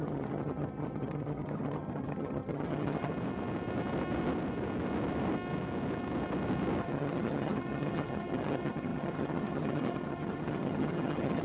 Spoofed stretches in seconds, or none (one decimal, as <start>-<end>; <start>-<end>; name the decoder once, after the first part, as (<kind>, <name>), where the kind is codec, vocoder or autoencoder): 0.0-3.1 (vocoder, HiFi-GAN); 6.8-11.4